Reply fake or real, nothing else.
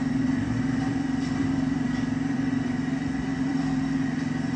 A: fake